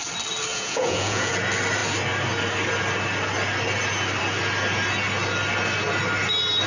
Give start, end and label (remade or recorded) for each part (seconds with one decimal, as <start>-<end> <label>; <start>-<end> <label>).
0.0-0.5 recorded; 0.5-1.3 remade; 1.3-6.7 recorded

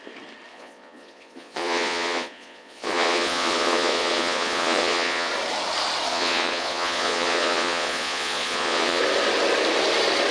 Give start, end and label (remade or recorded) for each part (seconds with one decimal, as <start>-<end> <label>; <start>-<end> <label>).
0.0-0.5 recorded; 0.5-5.3 remade; 5.3-6.1 recorded; 6.1-9.0 remade; 9.0-10.3 recorded

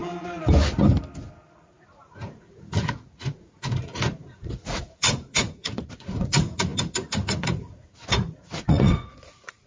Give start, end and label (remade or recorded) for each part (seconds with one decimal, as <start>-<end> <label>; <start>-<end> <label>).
0.0-1.6 recorded; 1.6-9.7 remade

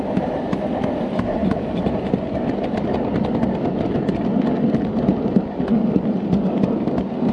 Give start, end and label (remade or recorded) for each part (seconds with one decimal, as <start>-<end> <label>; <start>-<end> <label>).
0.0-7.3 recorded

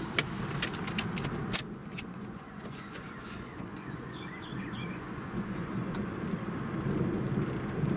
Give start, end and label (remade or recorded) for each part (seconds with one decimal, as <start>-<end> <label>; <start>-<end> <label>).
0.0-1.8 recorded; 1.8-6.1 remade; 6.1-8.0 recorded

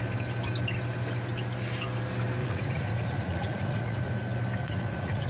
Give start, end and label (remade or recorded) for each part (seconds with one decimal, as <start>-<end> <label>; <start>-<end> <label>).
0.0-2.4 recorded; 2.4-4.1 remade; 4.1-4.6 recorded; 4.6-5.3 remade

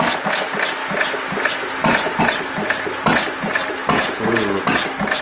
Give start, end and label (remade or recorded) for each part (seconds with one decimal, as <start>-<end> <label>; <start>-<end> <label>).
0.0-3.8 recorded; 3.8-4.7 remade; 4.7-5.2 recorded

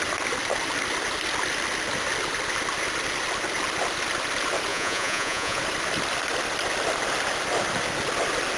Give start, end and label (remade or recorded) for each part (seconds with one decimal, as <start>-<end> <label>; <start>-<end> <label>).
0.0-4.7 recorded; 4.7-5.6 remade; 5.6-8.6 recorded